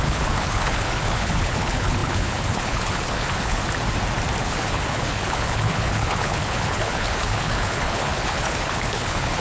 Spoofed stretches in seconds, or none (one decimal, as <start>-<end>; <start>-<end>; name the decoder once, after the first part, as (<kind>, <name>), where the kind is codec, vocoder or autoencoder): 0.0-3.6 (codec, HILCodec); 4.4-9.4

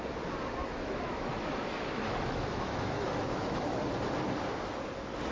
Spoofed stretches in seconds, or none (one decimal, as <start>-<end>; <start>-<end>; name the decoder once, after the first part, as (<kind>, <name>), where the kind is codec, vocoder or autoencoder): 0.6-3.8 (autoencoder, DAC-VAE)

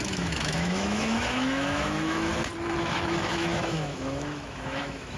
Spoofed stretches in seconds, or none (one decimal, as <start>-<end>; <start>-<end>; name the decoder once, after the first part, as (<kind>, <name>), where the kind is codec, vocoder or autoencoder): 0.0-2.3 (autoencoder, DAC-VAE); 2.8-5.2

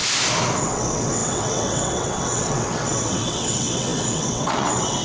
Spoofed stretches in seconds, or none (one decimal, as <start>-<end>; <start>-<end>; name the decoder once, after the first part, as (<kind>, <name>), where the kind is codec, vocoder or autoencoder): 0.6-5.0 (vocoder, WaveNeXt)

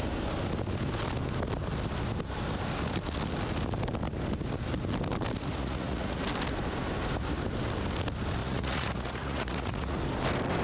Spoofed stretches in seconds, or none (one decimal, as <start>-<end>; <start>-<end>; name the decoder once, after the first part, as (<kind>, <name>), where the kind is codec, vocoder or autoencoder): 5.6-6.2 (vocoder, Vocos); 8.4-10.0

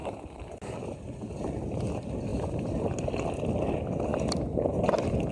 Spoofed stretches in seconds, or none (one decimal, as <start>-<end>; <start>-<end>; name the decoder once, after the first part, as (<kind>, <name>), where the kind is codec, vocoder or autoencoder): 0.0-0.7 (vocoder, BigVGAN v2); 2.3-3.3; 4.1-4.8